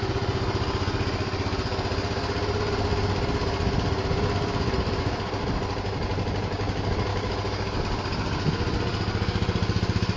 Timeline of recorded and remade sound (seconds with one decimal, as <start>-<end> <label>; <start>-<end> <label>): 0.0-7.1 recorded; 7.1-7.8 remade; 7.8-10.2 recorded